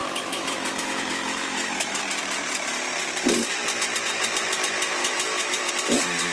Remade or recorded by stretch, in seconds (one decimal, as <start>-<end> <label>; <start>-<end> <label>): 0.0-2.0 remade; 2.0-5.0 recorded; 5.0-5.7 remade; 5.7-6.3 recorded